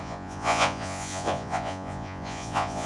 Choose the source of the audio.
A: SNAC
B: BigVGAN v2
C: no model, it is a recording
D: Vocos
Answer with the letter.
D